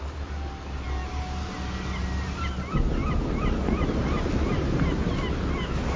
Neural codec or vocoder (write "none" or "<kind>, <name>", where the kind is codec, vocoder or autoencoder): none